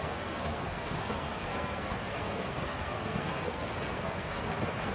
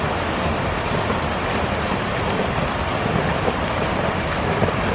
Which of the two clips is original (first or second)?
second